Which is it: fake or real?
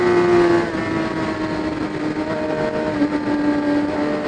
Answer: real